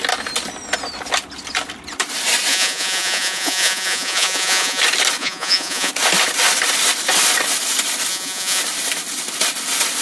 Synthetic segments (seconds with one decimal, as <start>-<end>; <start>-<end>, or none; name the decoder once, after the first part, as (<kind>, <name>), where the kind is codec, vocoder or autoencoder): 2.5-4.8 (vocoder, Vocos); 5.2-5.9; 8.1-8.6